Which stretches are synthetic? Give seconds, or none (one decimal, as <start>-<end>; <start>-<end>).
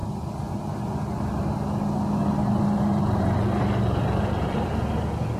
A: none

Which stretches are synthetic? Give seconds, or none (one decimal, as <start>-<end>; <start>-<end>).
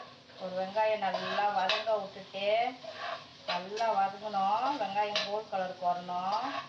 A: none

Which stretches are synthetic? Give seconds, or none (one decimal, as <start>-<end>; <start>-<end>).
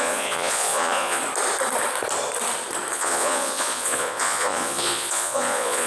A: 0.0-1.2; 2.9-5.9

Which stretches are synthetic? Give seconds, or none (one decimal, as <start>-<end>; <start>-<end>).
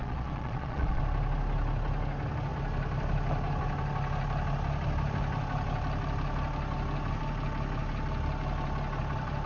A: 0.0-1.0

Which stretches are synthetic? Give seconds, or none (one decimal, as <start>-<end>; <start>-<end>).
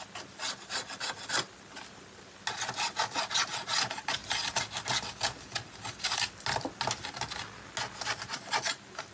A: none